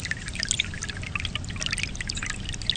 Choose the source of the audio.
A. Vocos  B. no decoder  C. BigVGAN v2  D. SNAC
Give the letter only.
B